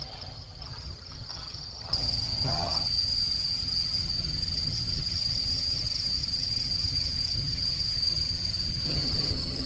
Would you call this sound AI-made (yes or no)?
yes